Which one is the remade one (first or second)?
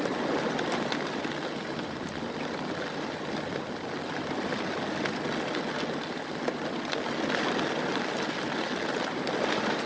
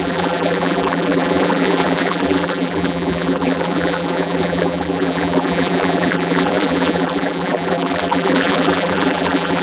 second